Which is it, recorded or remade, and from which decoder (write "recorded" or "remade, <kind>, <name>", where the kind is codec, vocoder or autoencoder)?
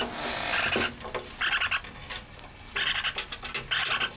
recorded